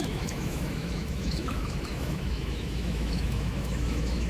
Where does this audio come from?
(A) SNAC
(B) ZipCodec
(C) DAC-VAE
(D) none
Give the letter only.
C